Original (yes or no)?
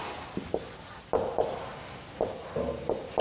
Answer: yes